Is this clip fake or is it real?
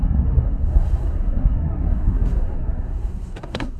fake